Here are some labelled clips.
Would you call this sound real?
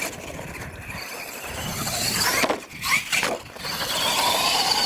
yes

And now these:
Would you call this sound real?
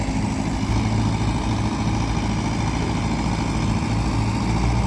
yes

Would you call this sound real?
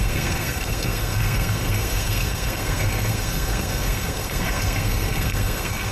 no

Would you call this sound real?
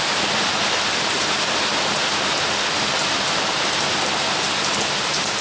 yes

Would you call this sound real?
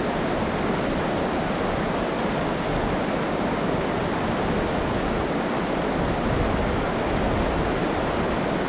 yes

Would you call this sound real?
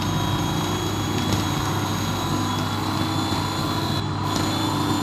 yes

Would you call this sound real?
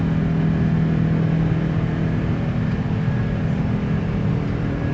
yes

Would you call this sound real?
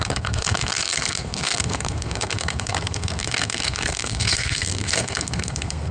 no